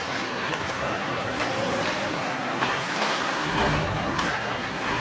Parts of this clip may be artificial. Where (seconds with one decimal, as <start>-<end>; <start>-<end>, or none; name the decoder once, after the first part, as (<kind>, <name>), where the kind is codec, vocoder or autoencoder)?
0.0-1.5 (codec, SNAC); 2.1-5.0